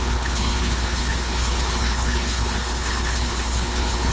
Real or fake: fake